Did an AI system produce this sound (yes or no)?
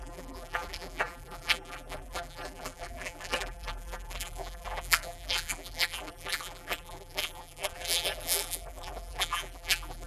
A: yes